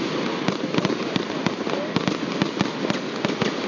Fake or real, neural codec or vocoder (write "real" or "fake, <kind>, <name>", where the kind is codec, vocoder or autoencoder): real